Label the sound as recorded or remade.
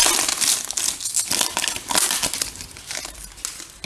recorded